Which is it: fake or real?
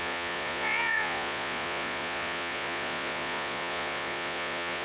fake